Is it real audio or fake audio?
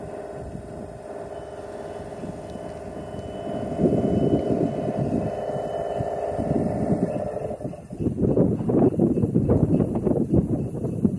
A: real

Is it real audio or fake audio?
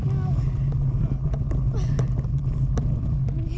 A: real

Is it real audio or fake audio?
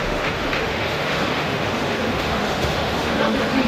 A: fake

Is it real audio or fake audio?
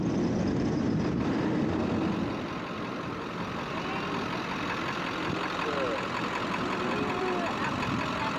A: real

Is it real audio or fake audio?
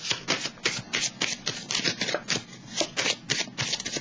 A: real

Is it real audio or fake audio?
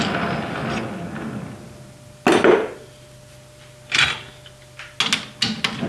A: real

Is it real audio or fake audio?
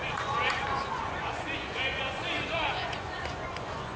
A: fake